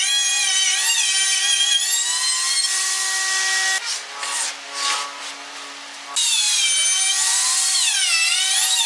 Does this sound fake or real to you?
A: real